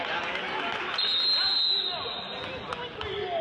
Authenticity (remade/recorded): recorded